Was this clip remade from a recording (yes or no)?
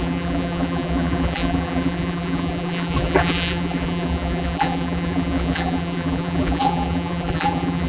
yes